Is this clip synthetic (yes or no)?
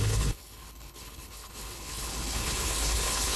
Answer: yes